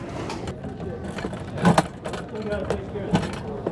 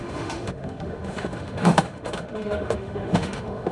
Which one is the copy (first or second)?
second